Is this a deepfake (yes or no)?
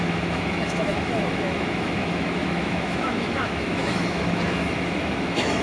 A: yes